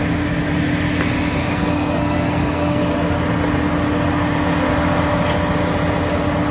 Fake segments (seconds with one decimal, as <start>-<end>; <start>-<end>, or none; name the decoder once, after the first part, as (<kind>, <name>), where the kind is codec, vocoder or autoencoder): 1.4-2.8 (codec, SNAC)